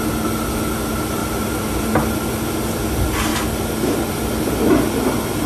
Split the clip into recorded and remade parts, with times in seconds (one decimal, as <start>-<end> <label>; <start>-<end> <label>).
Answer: 0.0-1.2 recorded; 1.2-1.9 remade; 1.9-5.5 recorded